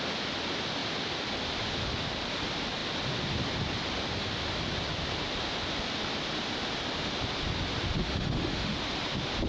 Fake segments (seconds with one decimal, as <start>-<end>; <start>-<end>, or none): 8.0-8.7